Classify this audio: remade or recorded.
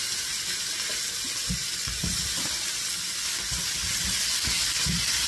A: recorded